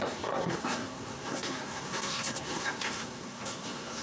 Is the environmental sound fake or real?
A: fake